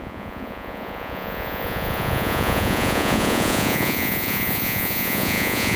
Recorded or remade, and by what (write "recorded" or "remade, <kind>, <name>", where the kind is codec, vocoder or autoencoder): remade, vocoder, Vocos